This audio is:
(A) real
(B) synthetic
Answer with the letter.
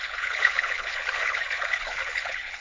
B